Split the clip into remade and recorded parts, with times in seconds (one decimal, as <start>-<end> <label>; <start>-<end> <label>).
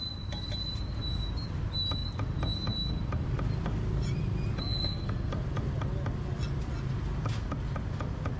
0.0-4.7 recorded; 4.7-5.3 remade; 5.3-8.4 recorded